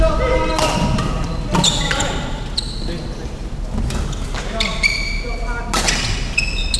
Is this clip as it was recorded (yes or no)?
yes